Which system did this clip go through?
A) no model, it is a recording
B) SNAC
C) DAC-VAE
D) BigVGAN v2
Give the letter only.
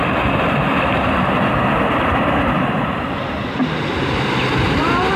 A